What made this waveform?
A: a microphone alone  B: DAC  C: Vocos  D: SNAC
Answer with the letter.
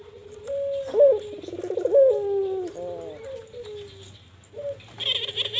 A